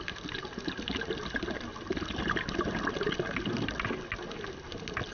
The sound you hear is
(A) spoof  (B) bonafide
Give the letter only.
B